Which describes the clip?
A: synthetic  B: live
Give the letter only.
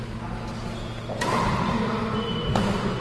B